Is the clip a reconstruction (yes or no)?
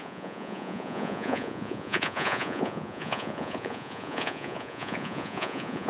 yes